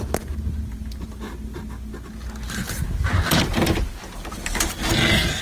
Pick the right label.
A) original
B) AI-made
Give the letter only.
A